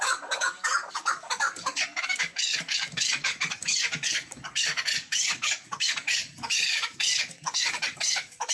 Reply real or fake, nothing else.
fake